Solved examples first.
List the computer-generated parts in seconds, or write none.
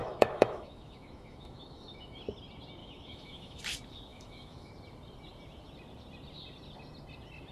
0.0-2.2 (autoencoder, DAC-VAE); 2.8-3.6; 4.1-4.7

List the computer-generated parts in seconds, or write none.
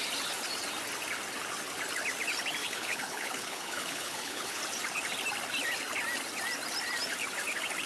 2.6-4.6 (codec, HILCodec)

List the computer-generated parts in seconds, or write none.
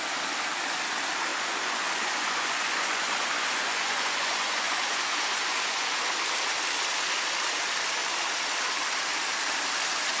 1.3-6.0 (vocoder, Vocos)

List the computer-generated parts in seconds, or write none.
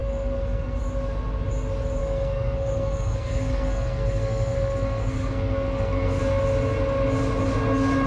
0.0-0.8 (codec, SNAC); 2.0-6.2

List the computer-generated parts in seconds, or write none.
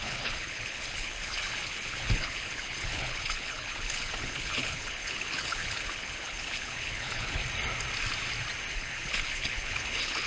0.0-7.4 (codec, HILCodec); 8.7-10.3